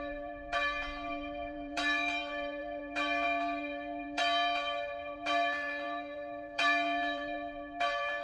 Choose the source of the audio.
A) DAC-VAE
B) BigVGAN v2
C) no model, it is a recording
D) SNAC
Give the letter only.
B